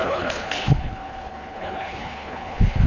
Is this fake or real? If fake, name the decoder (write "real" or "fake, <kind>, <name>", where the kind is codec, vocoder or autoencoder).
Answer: fake, codec, HILCodec